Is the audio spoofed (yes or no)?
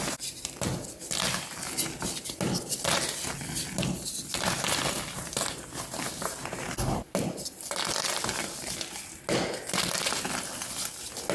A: no